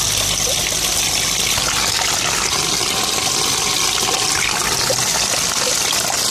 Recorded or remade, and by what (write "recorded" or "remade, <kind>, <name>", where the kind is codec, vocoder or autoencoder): recorded